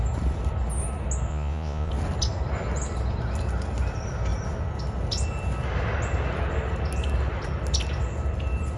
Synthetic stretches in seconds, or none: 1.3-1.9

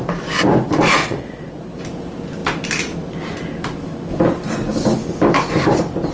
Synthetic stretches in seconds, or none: 1.0-1.8

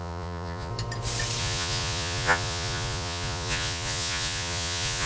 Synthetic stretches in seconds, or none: 0.0-0.7; 1.4-5.1